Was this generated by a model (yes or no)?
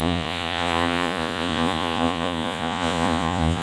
yes